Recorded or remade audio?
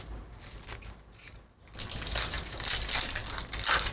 recorded